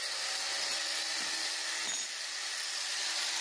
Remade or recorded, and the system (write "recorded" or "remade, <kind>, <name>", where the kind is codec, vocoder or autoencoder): recorded